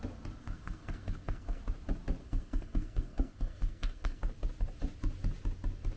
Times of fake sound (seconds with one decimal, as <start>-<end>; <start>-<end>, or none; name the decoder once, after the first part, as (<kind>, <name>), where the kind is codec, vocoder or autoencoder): 0.4-1.6 (codec, SNAC); 2.2-4.2